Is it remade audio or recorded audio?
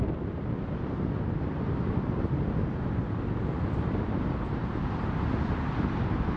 recorded